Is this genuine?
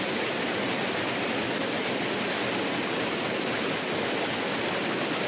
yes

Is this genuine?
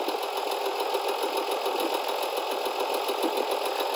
yes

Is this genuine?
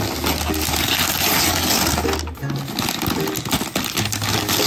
yes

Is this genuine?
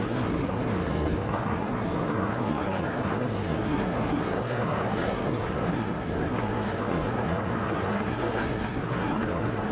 no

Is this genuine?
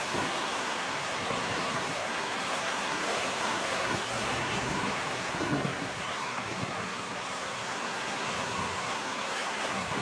no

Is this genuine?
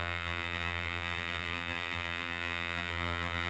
no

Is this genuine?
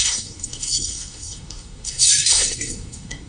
no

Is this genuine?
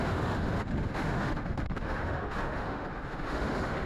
no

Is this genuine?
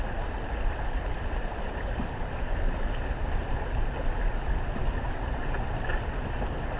yes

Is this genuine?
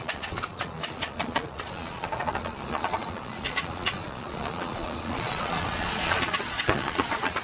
no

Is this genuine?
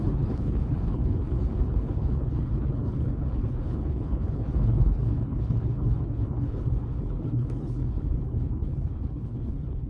no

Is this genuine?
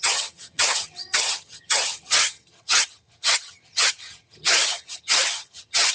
no